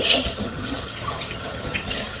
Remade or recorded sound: remade